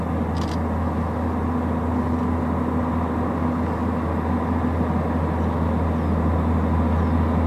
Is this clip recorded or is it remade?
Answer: recorded